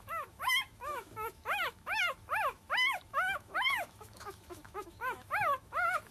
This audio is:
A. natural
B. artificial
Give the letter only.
B